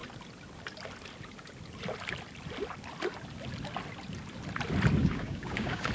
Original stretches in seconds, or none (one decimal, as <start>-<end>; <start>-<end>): 0.0-5.0